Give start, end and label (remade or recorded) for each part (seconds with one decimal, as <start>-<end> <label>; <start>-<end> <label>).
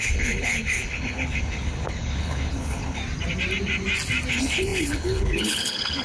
0.0-3.0 remade; 3.0-4.3 recorded; 4.3-6.0 remade